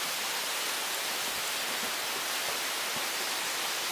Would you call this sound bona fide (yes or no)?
yes